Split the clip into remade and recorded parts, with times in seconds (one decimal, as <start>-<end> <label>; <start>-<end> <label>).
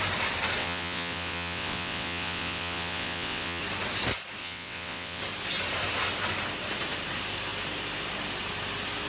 0.0-0.6 recorded; 0.6-3.6 remade; 3.6-4.4 recorded; 4.4-5.2 remade; 5.2-9.1 recorded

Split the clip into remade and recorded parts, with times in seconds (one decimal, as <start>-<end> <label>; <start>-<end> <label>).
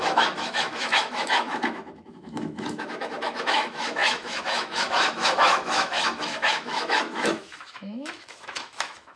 0.0-9.2 remade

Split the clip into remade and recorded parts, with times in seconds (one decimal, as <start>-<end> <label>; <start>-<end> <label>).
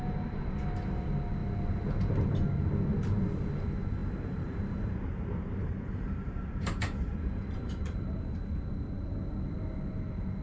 0.0-4.0 recorded; 4.0-8.6 remade; 8.6-10.4 recorded